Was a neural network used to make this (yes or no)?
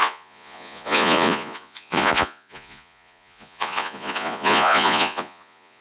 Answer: yes